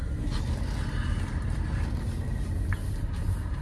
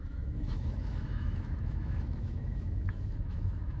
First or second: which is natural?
first